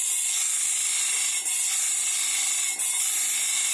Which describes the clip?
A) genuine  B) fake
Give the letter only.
A